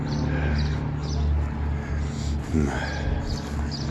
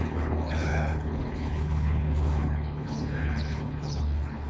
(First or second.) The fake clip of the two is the second